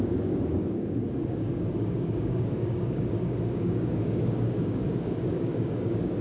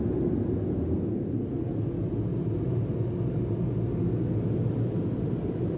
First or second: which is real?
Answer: second